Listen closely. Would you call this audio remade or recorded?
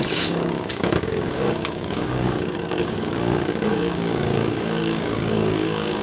remade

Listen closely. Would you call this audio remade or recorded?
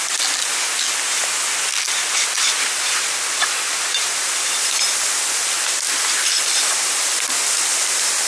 recorded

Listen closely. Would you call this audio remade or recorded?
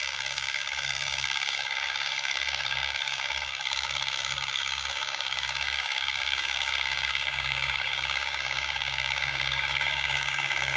remade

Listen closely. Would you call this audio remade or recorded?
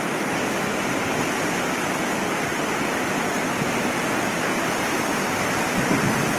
recorded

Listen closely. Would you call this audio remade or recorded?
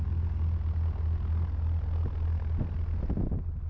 recorded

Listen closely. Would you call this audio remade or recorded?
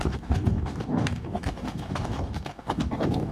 remade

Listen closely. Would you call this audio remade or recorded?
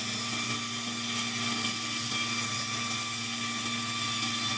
recorded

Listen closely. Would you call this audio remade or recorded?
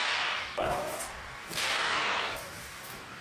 remade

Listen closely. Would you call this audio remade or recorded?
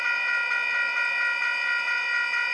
recorded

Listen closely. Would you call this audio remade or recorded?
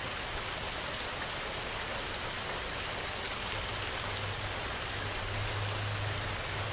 recorded